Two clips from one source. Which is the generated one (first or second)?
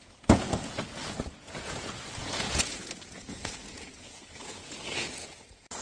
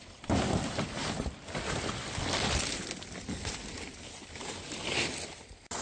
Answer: first